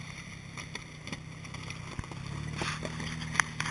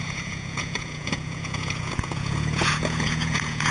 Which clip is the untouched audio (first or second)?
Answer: first